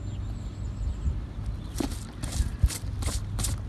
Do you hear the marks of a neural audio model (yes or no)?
no